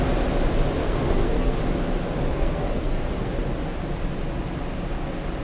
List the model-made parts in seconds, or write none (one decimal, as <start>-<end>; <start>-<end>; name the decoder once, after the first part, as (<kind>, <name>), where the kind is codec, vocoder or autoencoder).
0.8-1.6 (codec, SNAC); 2.3-3.3